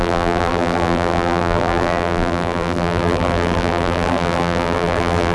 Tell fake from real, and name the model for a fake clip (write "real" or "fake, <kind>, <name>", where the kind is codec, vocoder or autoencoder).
fake, vocoder, BigVGAN v2